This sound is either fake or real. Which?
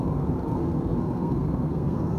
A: fake